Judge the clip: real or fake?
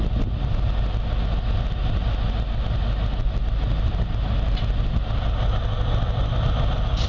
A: real